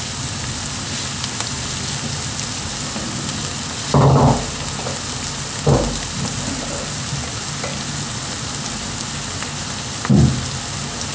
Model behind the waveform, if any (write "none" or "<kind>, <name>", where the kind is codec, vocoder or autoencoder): none